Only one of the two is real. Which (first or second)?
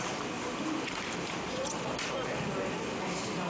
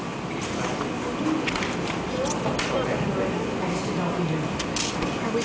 second